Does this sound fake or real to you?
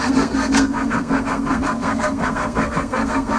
fake